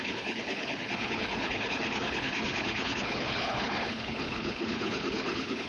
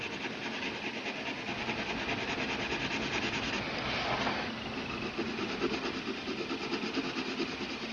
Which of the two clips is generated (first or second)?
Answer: first